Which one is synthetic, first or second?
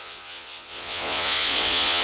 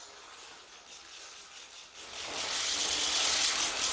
first